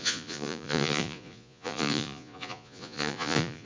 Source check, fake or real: fake